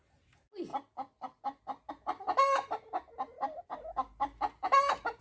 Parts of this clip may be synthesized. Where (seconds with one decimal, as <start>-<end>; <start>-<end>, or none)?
none